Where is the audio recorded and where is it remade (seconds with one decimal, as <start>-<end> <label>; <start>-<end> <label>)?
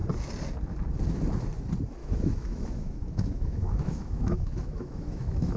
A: 0.0-2.0 recorded; 2.0-5.6 remade